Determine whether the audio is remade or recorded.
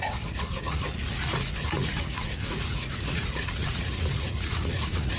remade